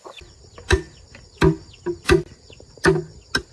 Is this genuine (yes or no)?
yes